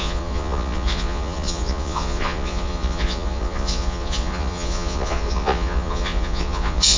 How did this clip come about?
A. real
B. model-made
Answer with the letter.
B